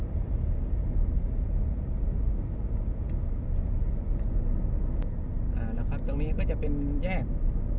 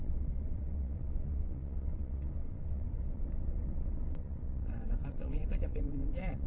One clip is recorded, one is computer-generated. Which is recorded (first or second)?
first